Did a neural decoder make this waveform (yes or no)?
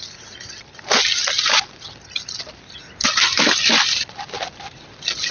no